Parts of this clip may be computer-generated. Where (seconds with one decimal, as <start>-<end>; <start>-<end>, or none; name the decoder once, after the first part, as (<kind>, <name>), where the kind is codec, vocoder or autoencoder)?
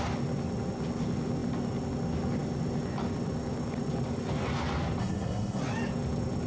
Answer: 5.0-5.6 (codec, SNAC)